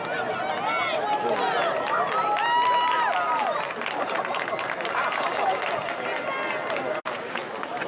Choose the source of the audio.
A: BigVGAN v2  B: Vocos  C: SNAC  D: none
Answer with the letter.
D